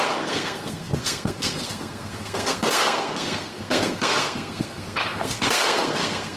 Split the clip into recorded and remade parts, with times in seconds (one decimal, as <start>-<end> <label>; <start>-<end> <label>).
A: 0.0-6.4 remade